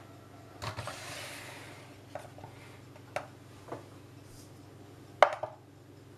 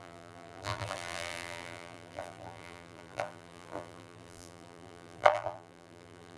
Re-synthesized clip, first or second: second